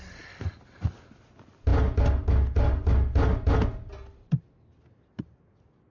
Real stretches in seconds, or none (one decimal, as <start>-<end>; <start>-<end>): 0.0-5.9